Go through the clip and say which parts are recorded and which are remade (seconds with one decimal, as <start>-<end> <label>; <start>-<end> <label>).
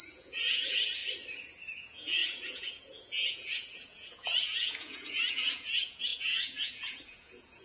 0.0-1.0 remade; 1.0-1.8 recorded; 1.8-7.6 remade